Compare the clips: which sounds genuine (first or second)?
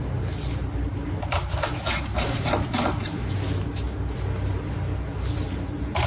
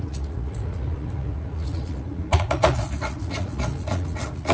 first